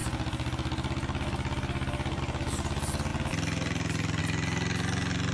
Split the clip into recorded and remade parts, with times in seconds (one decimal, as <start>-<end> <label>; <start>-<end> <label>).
0.0-5.3 recorded